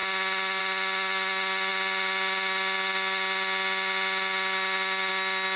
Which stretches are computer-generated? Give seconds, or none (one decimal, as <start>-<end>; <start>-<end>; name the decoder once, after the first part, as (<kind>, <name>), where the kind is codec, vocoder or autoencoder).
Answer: none